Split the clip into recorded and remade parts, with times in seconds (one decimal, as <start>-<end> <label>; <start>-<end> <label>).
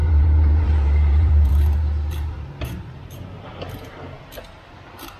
0.0-3.1 remade; 3.1-5.2 recorded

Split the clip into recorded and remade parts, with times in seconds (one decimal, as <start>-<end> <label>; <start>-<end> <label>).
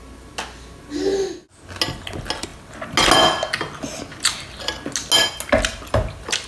0.0-6.5 recorded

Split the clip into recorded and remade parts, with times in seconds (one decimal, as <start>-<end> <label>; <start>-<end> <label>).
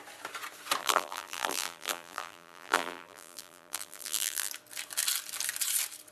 0.0-0.8 recorded; 0.8-4.5 remade; 4.5-6.1 recorded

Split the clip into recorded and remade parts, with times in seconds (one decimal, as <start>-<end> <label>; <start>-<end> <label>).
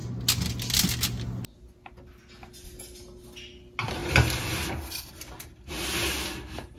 0.0-4.0 recorded; 4.0-5.3 remade; 5.3-6.8 recorded